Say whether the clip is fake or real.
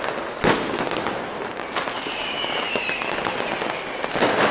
real